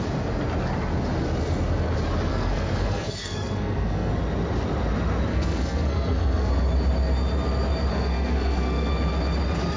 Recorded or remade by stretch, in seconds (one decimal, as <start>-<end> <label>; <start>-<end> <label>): 0.0-2.3 recorded; 2.3-4.1 remade; 4.1-5.3 recorded; 5.3-6.5 remade; 6.5-7.9 recorded; 7.9-8.9 remade; 8.9-9.8 recorded